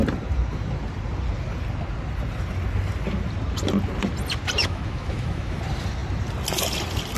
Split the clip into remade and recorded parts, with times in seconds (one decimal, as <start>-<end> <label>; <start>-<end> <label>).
0.0-4.6 recorded; 4.6-5.6 remade; 5.6-7.2 recorded